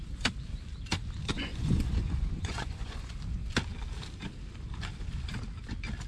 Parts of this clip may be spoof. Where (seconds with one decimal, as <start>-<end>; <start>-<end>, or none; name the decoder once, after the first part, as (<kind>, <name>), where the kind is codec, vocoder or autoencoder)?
1.3-3.1 (vocoder, Vocos)